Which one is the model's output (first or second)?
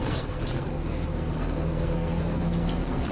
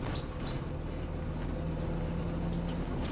first